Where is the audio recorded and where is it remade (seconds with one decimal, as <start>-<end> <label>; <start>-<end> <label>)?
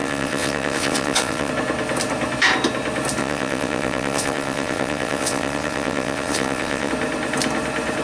0.0-1.5 remade; 1.5-3.2 recorded; 3.2-6.9 remade; 6.9-8.0 recorded